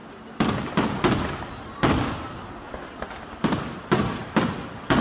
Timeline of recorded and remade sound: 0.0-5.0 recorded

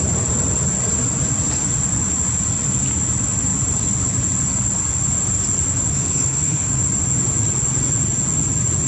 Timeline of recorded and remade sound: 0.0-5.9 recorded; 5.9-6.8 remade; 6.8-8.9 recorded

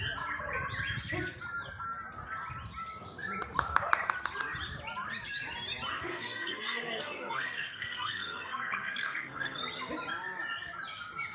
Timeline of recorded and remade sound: 0.0-5.9 recorded; 5.9-9.6 remade; 9.6-11.3 recorded

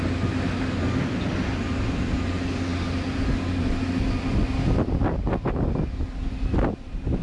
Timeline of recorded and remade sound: 0.0-7.2 recorded

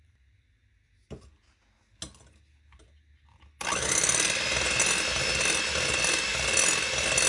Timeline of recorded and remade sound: 0.0-7.3 recorded

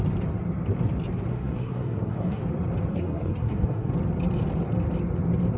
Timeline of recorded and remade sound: 0.0-1.3 recorded; 1.3-2.4 remade; 2.4-2.9 recorded; 2.9-3.9 remade; 3.9-5.6 recorded

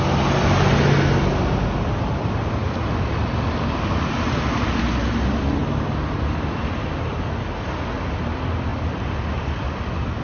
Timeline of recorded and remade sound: 0.0-10.2 recorded